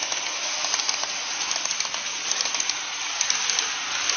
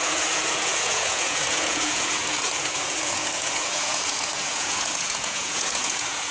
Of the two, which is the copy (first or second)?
second